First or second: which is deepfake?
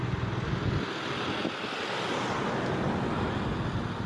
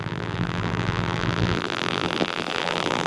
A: second